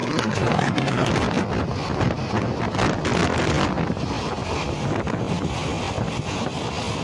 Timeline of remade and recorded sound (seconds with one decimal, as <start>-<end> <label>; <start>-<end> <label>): 0.0-1.1 remade; 1.1-7.0 recorded